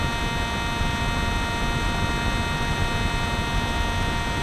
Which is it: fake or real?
real